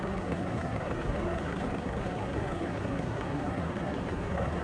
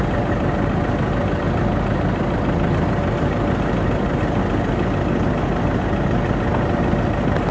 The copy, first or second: first